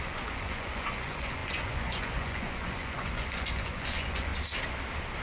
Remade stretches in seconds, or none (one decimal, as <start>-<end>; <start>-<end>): 0.0-4.3